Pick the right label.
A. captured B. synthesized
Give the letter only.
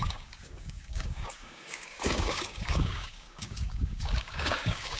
B